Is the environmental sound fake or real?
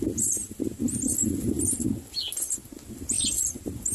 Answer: real